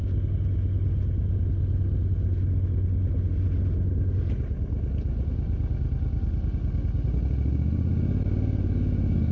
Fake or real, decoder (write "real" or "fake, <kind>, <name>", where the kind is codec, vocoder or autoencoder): real